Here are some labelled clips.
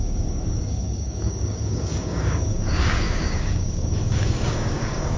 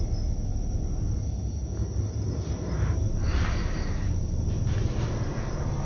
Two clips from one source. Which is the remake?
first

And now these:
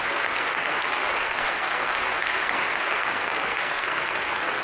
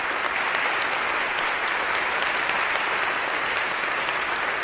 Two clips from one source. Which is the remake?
first